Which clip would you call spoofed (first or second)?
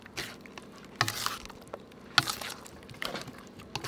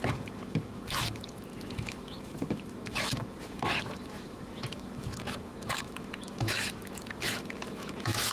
second